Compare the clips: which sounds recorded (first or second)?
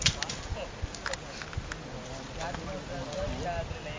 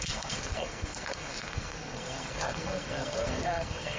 first